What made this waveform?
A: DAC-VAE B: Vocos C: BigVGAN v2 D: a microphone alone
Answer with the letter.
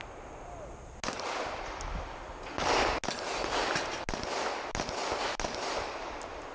D